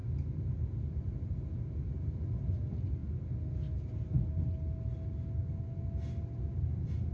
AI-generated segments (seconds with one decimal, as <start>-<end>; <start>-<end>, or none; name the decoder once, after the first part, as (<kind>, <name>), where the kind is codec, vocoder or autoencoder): none